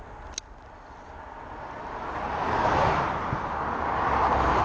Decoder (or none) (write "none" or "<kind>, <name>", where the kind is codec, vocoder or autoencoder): none